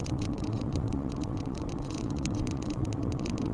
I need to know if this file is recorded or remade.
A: remade